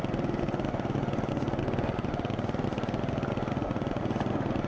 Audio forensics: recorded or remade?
recorded